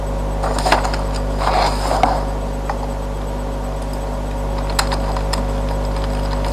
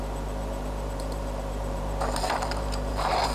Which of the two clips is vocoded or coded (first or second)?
second